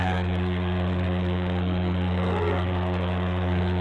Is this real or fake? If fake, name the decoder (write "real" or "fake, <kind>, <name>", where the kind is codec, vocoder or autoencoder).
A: fake, codec, SNAC